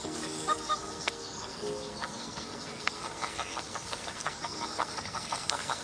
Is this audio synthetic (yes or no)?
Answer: yes